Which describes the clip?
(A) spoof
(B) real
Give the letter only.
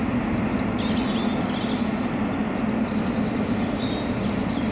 B